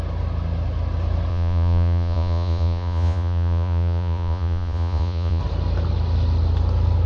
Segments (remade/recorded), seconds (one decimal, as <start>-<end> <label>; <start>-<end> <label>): 0.0-1.3 recorded; 1.3-5.4 remade; 5.4-7.1 recorded